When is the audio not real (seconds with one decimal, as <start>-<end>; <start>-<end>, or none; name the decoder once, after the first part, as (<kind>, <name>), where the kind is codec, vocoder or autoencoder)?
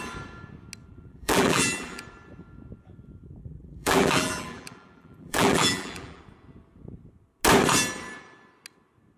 0.9-2.0 (vocoder, BigVGAN v2); 3.4-6.2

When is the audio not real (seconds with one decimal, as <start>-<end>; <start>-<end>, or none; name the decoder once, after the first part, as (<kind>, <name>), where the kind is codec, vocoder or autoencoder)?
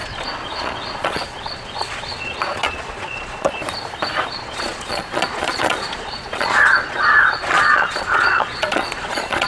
0.0-3.6 (vocoder, Vocos); 4.3-9.5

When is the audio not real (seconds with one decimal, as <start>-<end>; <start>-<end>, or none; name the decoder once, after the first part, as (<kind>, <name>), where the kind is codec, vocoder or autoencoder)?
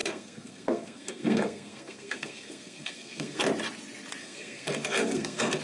0.0-3.4 (codec, SNAC); 4.2-5.6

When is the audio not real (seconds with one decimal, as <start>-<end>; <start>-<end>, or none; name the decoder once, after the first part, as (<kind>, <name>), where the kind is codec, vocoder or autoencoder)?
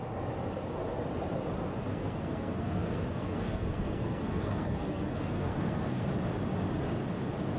1.9-6.1 (codec, SNAC)